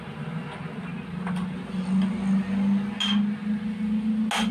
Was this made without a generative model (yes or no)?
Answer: yes